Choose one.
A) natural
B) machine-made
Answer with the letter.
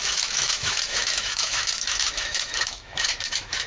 B